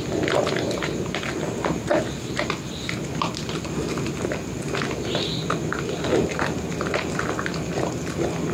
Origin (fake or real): real